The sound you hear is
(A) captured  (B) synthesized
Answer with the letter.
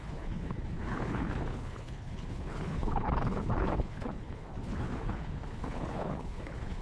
B